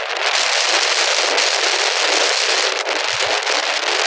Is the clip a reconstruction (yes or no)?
no